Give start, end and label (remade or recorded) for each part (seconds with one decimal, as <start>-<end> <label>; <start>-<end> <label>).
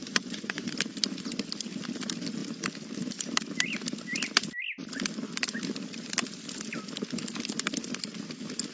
0.0-0.7 remade; 0.7-8.7 recorded